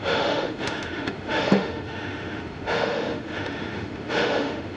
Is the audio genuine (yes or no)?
no